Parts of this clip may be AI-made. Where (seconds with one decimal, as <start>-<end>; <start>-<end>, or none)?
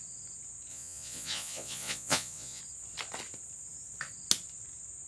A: 0.7-2.6